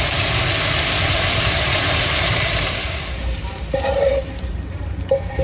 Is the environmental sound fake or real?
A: fake